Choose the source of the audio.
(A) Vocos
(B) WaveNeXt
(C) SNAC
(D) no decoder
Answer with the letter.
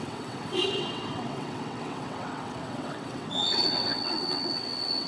B